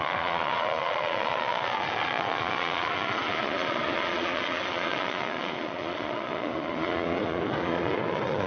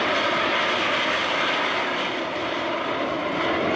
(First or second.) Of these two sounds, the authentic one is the second